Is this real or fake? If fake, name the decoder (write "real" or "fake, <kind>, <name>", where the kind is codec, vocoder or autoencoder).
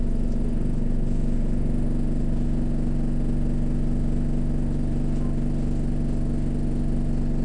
real